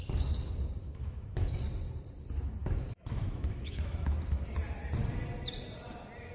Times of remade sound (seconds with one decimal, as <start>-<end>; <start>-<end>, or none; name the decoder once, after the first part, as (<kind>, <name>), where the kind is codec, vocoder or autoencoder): 0.8-1.6 (autoencoder, DAC-VAE); 2.6-4.4